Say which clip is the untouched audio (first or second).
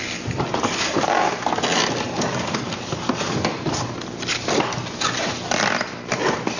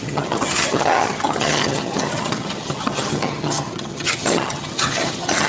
first